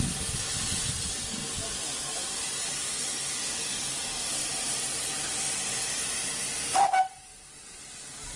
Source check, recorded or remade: recorded